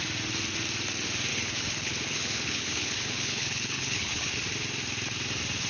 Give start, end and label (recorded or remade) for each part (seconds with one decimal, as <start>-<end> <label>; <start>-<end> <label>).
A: 0.0-1.3 recorded; 1.3-4.3 remade; 4.3-5.7 recorded